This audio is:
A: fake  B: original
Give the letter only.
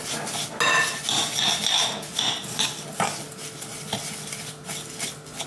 B